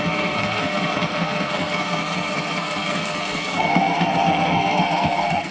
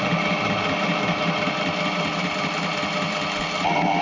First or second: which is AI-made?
first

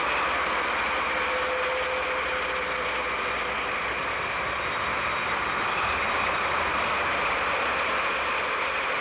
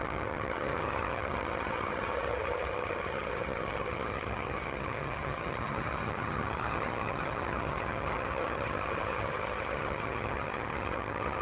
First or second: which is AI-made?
second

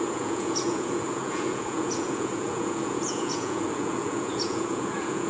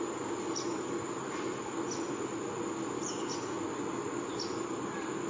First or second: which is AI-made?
first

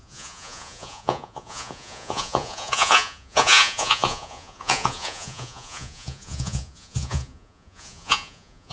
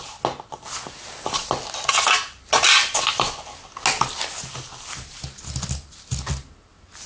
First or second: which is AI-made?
first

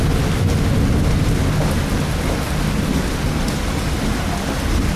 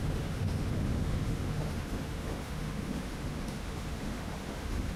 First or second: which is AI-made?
second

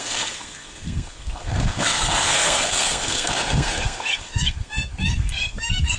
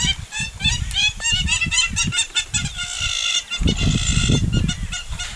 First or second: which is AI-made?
first